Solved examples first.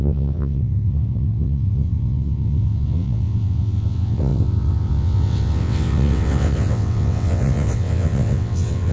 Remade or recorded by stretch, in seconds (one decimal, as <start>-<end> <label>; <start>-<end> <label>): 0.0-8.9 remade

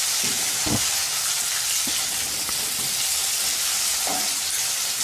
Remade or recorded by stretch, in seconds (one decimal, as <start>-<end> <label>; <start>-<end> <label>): 0.0-5.0 recorded

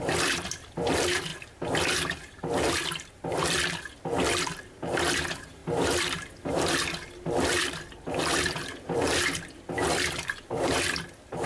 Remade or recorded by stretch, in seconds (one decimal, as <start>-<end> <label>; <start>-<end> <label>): 0.0-1.3 remade; 1.3-4.4 recorded; 4.4-11.5 remade